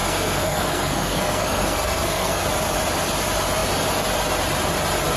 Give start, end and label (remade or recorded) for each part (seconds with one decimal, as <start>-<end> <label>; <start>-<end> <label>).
0.0-2.4 remade; 2.4-5.2 recorded